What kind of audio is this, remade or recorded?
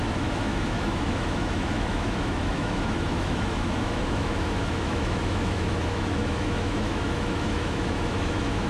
remade